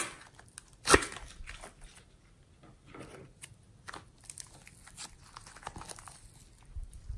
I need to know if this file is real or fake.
real